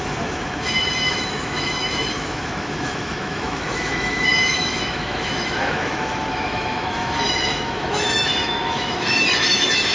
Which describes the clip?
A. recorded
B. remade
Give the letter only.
B